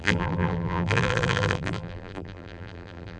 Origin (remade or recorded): remade